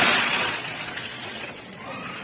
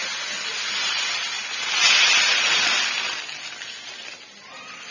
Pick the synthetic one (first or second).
first